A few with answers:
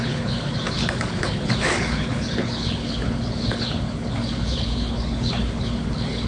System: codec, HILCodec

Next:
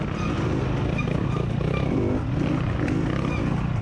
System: none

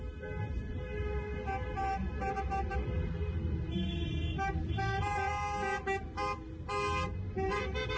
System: none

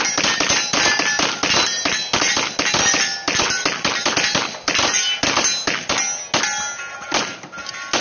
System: none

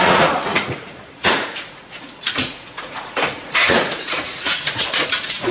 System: vocoder, Vocos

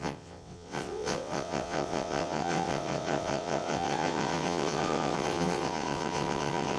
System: vocoder, WaveNeXt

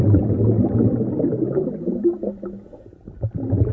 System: none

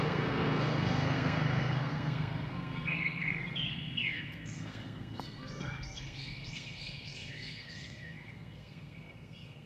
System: codec, SNAC